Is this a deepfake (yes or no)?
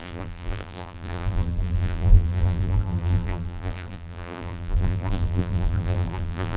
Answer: yes